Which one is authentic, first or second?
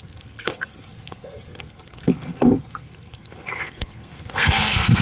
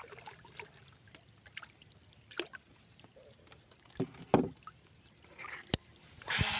second